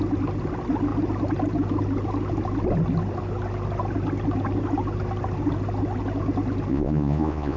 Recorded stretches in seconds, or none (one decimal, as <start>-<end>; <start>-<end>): 0.0-6.7